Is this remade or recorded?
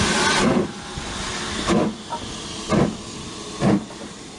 recorded